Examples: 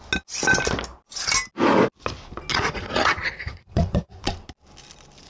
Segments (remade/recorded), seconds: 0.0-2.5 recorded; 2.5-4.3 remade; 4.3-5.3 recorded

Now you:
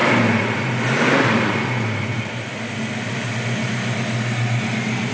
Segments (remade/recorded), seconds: 0.0-5.1 recorded

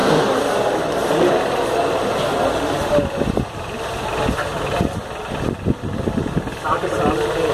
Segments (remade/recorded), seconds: 0.0-1.1 remade; 1.1-3.0 recorded; 3.0-4.1 remade; 4.1-7.5 recorded

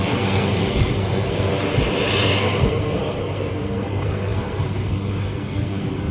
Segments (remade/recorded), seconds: 0.0-1.5 remade; 1.5-2.4 recorded; 2.4-6.1 remade